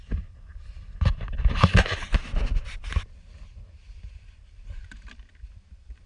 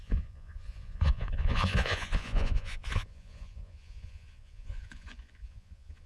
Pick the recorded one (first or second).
first